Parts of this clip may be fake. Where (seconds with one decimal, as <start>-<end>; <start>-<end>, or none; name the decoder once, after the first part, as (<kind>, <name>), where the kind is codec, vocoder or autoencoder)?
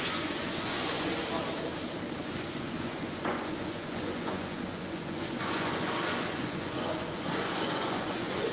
0.0-1.2 (vocoder, Vocos); 2.2-8.5